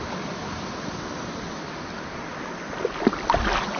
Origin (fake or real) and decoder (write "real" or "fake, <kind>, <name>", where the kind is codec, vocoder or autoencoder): real